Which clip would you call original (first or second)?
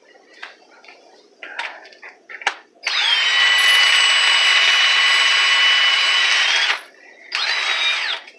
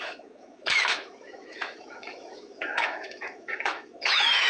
first